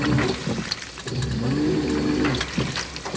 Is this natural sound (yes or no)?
yes